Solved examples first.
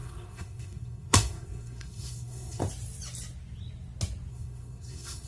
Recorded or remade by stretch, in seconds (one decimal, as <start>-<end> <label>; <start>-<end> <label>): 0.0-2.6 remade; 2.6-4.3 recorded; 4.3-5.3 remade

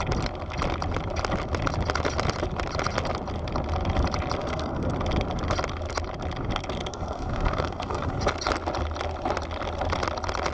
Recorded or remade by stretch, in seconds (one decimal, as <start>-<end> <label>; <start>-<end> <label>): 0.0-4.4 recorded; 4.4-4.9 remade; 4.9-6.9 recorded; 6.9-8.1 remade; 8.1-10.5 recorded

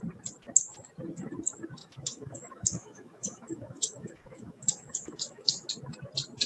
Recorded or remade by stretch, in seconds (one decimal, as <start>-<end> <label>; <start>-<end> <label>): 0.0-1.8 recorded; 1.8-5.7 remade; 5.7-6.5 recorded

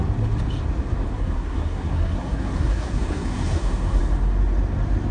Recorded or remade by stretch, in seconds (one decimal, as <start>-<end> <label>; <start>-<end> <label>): 0.0-1.1 recorded; 1.1-4.0 remade; 4.0-5.1 recorded

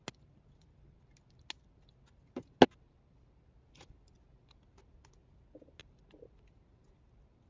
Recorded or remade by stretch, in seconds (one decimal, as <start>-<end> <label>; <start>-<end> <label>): 0.0-7.5 recorded